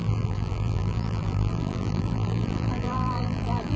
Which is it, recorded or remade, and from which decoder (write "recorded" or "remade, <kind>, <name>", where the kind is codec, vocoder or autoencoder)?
remade, vocoder, BigVGAN v2